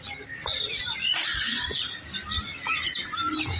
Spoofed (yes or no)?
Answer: no